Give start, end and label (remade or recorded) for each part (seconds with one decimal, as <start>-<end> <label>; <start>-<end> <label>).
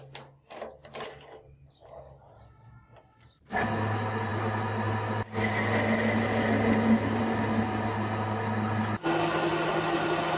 0.0-10.4 recorded